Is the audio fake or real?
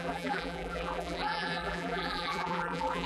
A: fake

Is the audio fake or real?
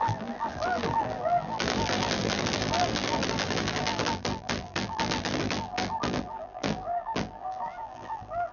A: fake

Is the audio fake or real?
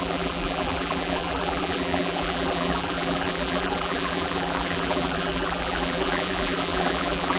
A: fake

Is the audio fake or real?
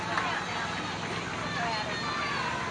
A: real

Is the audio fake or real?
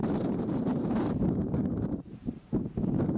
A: fake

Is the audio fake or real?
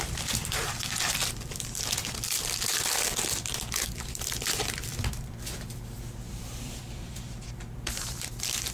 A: fake